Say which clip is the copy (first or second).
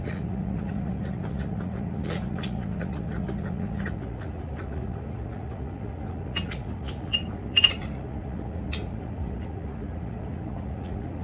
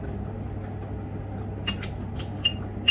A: first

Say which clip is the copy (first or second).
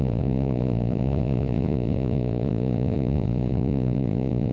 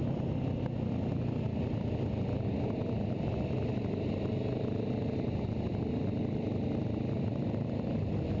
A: first